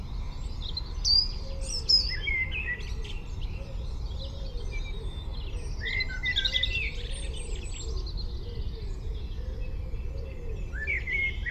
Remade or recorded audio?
recorded